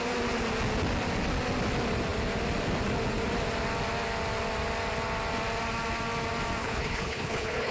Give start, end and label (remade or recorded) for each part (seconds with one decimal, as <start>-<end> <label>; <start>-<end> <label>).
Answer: 0.0-6.6 recorded; 6.6-7.7 remade